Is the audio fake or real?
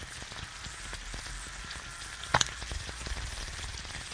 real